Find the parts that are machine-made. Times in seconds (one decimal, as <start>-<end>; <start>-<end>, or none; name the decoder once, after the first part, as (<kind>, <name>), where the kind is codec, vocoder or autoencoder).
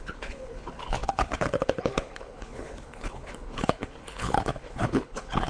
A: 0.0-5.5 (codec, HILCodec)